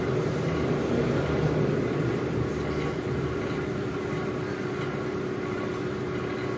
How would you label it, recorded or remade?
recorded